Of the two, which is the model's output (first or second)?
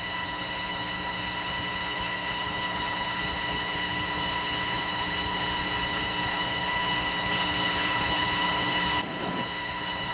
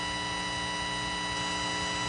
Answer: first